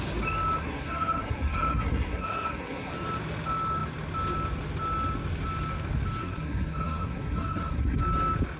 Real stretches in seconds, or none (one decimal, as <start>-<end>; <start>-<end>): 0.0-0.6; 2.9-6.2; 8.0-8.6